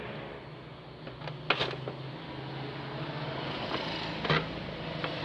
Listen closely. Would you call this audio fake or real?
real